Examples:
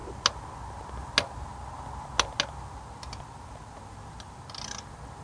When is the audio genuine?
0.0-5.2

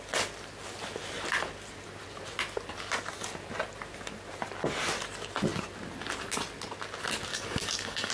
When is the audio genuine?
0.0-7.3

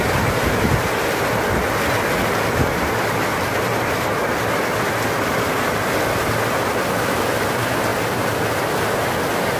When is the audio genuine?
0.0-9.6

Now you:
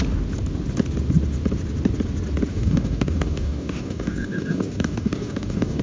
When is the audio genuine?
0.0-2.5